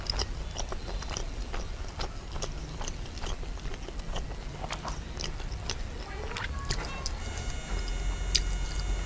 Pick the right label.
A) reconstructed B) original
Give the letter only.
B